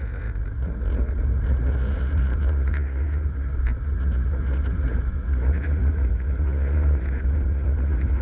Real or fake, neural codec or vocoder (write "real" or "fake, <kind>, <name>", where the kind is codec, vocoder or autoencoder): fake, vocoder, Vocos